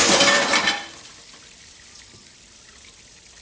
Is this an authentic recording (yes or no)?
no